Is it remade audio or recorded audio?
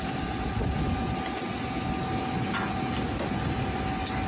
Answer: recorded